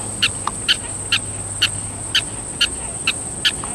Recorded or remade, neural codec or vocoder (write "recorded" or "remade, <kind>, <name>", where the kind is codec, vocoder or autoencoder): recorded